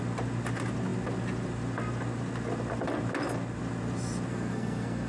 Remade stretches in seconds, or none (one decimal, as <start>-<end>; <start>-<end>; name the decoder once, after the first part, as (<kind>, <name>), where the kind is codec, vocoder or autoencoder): 4.3-5.1 (codec, SNAC)